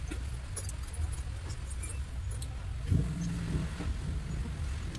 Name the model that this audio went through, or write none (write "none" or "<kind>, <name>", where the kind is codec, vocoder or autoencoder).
none